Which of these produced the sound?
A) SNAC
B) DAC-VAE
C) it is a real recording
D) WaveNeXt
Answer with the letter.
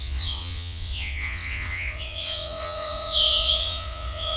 D